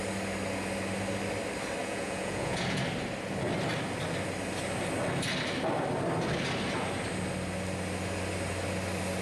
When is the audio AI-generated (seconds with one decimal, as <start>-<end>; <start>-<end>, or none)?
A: 1.8-2.8